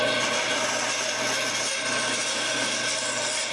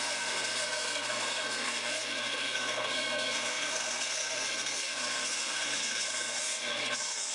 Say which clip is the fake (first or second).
second